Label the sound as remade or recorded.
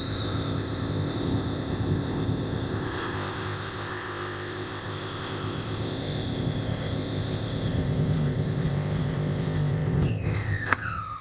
remade